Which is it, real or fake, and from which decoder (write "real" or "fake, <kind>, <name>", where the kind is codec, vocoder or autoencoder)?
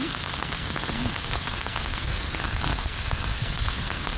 fake, codec, SNAC